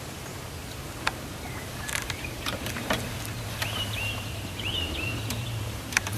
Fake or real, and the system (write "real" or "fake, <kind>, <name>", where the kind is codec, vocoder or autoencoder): fake, vocoder, BigVGAN v2